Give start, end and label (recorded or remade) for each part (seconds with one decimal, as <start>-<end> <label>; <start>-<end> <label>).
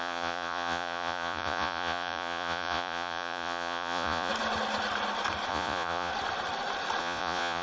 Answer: 0.0-4.3 remade; 4.3-5.5 recorded; 5.5-6.1 remade; 6.1-7.0 recorded; 7.0-7.6 remade